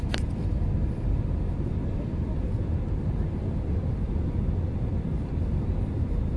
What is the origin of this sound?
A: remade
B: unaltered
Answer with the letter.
A